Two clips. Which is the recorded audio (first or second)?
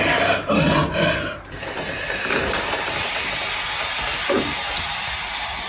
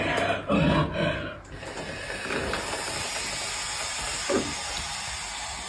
second